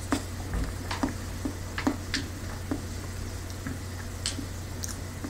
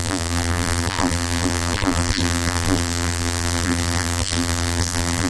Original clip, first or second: first